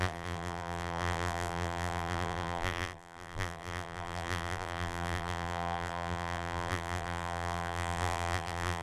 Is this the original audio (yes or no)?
no